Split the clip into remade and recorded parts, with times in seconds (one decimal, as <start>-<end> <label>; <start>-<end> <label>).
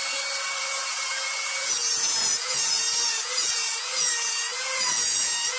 0.0-0.6 recorded; 0.6-5.6 remade